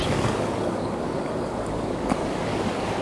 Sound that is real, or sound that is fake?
fake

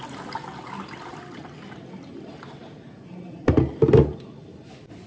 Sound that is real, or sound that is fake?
real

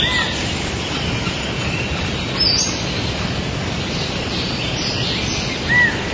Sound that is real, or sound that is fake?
real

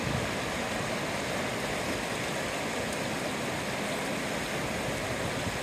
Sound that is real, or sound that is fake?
real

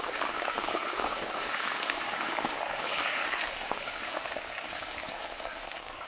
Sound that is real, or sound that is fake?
fake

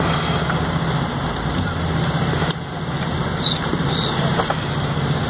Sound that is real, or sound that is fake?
real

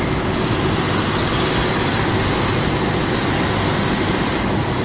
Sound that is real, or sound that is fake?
real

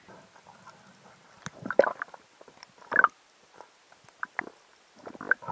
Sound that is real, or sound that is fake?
real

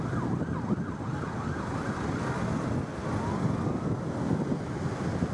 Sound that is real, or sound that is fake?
real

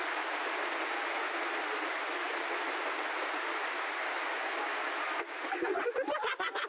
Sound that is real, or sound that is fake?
real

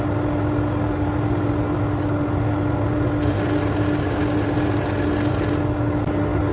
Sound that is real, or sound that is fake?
real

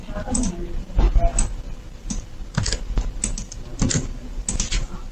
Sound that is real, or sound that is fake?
real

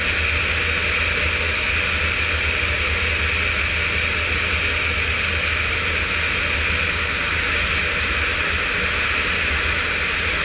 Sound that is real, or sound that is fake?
real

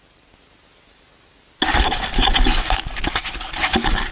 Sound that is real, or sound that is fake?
real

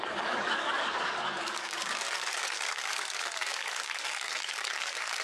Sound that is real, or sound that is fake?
fake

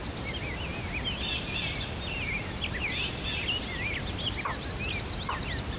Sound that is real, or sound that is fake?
real